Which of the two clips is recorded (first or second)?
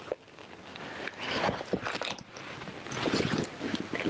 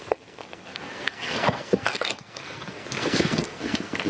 first